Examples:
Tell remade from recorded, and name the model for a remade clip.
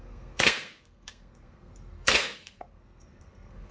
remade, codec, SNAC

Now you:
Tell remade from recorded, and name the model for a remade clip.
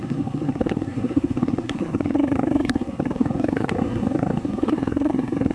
remade, codec, SNAC